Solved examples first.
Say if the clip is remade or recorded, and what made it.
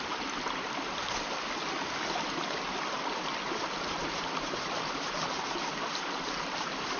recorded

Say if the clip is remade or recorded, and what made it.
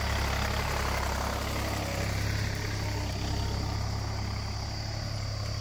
recorded